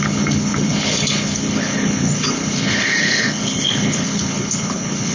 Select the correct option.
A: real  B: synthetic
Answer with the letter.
B